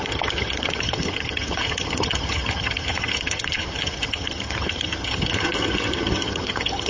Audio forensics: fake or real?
fake